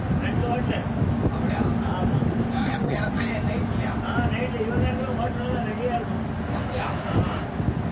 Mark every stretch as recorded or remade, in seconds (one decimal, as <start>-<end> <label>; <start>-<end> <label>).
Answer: 0.0-2.6 recorded; 2.6-3.2 remade; 3.2-7.9 recorded